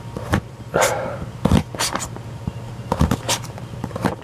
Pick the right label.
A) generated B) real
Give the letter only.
A